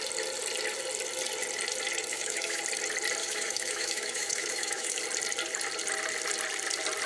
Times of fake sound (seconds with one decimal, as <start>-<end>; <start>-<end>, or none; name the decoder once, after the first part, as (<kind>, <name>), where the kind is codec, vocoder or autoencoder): 2.1-2.6 (autoencoder, DAC-VAE); 3.2-5.0

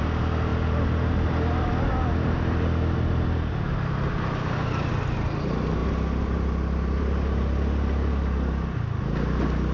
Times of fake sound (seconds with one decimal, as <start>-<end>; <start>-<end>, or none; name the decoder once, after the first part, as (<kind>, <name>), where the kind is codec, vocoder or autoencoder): none